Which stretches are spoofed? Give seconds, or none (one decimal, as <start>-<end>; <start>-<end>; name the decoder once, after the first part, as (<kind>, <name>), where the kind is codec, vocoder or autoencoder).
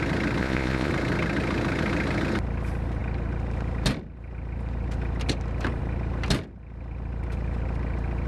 0.4-0.9 (vocoder, Vocos)